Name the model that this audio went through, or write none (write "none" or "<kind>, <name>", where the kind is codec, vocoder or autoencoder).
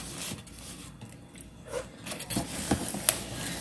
none